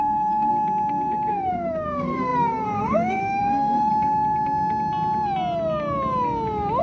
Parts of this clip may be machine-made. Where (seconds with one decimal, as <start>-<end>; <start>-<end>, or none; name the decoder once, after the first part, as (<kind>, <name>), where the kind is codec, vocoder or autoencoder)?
0.0-0.5 (codec, SNAC); 1.3-3.9